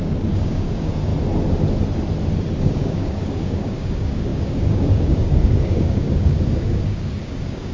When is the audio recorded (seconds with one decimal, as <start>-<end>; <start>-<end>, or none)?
1.1-2.6